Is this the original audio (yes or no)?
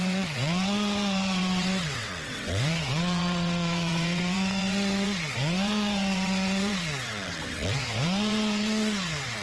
no